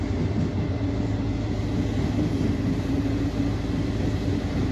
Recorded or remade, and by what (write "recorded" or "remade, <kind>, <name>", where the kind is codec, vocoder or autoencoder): recorded